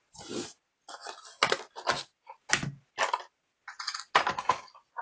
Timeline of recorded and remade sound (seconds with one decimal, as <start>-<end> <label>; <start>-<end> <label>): 0.0-5.0 recorded